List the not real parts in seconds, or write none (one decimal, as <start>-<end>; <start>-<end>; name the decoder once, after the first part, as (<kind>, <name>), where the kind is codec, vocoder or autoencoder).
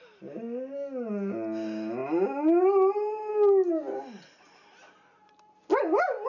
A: none